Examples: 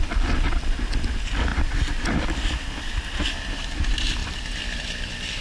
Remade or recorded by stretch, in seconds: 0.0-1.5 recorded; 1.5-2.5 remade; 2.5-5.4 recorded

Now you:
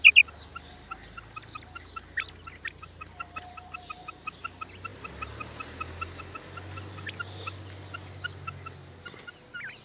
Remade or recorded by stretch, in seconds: 0.0-9.8 recorded